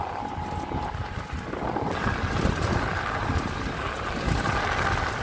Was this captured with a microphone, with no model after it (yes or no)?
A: yes